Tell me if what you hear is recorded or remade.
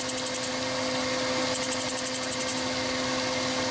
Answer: recorded